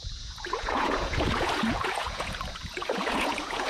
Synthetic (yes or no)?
yes